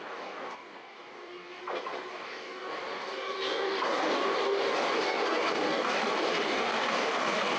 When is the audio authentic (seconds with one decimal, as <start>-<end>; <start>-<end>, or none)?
1.6-2.1